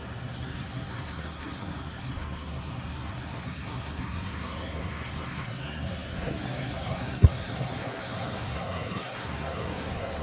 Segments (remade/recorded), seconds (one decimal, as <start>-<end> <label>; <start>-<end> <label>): 0.0-10.2 remade